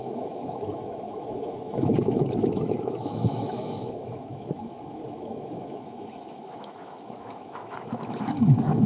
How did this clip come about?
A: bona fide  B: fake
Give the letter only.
B